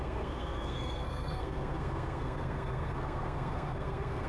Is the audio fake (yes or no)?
yes